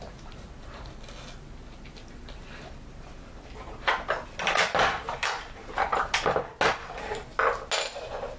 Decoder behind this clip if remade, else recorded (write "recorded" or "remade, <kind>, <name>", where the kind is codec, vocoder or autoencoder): recorded